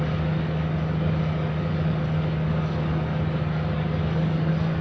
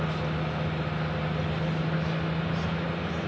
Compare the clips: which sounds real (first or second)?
second